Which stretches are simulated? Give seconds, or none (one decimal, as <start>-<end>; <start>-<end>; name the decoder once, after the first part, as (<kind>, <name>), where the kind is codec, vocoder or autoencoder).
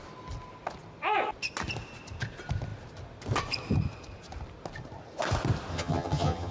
5.7-6.5 (vocoder, HiFi-GAN)